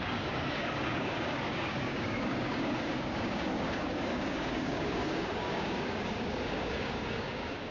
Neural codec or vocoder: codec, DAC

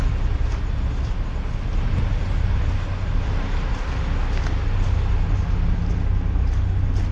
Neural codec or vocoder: none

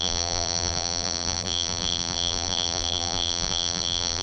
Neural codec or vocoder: vocoder, BigVGAN v2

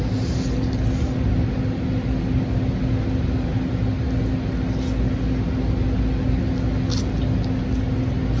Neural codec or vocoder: none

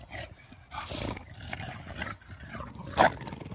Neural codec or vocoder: none